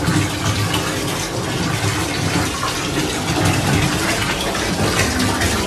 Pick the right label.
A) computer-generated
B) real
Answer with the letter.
B